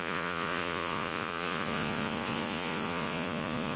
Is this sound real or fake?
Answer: fake